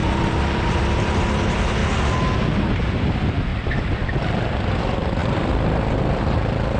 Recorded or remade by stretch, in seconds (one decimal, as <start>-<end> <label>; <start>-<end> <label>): 0.0-1.8 remade; 1.8-2.5 recorded; 2.5-3.5 remade; 3.5-4.8 recorded; 4.8-6.8 remade